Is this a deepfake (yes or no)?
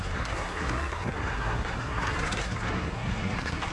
yes